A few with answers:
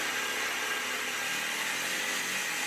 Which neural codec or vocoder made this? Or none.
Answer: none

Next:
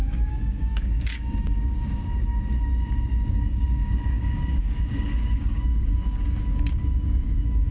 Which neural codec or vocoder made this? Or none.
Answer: codec, DAC